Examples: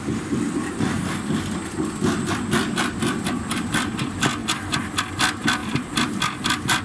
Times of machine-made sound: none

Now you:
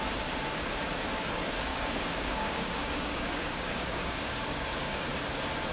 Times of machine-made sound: 1.7-5.0 (codec, DAC)

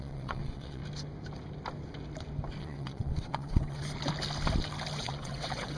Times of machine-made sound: 0.0-0.8 (vocoder, WaveNeXt); 2.6-3.8; 5.0-5.8

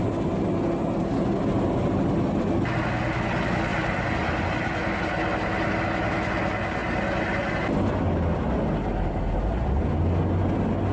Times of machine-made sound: none